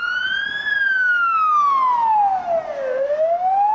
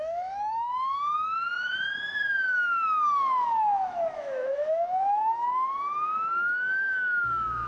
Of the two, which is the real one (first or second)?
first